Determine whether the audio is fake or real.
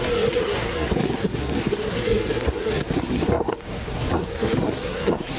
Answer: fake